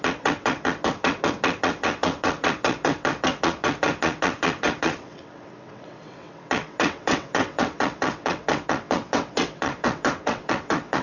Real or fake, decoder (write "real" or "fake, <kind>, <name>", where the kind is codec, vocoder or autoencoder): fake, vocoder, WaveNeXt